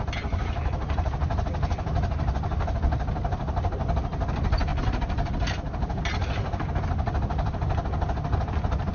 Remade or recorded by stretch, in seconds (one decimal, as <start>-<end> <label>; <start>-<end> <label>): 0.0-4.7 recorded; 4.7-6.7 remade; 6.7-8.9 recorded

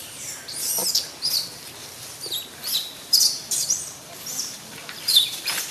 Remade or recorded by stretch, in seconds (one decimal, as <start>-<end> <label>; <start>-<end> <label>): 0.0-0.8 remade; 0.8-2.5 recorded; 2.5-5.7 remade

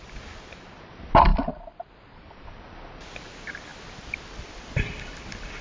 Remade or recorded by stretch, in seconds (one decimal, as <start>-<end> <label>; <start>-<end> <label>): 0.0-5.6 recorded

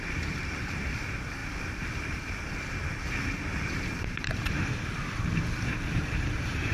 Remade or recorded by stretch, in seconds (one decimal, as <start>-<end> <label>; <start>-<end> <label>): 0.0-6.7 remade

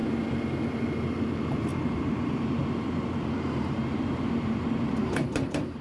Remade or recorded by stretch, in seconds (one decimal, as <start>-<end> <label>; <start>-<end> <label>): 0.0-1.2 recorded; 1.2-5.8 remade

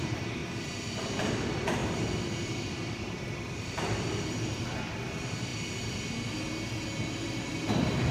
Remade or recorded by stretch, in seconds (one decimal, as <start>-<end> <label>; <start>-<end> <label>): 0.0-5.5 remade; 5.5-7.1 recorded; 7.1-8.1 remade

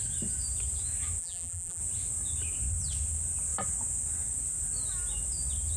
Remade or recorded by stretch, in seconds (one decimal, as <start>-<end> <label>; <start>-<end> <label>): 0.0-1.2 recorded; 1.2-1.8 remade; 1.8-5.8 recorded